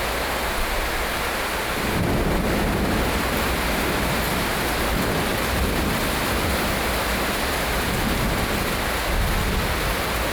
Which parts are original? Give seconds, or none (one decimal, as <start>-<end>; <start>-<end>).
0.0-10.3